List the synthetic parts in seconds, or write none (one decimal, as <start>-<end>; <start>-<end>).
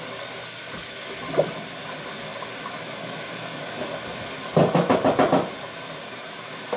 none